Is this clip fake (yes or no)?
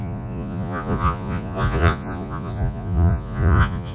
yes